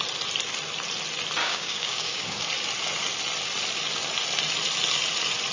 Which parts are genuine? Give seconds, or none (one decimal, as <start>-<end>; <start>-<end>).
0.0-1.4; 2.4-5.5